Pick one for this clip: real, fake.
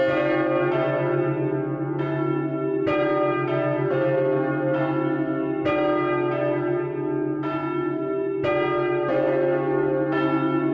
real